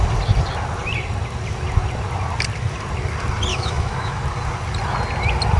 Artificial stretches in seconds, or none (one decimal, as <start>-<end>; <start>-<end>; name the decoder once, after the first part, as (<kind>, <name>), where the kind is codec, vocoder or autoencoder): 3.5-4.2 (autoencoder, DAC-VAE)